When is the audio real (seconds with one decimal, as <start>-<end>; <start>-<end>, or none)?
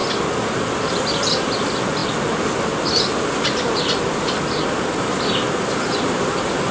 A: 0.0-6.7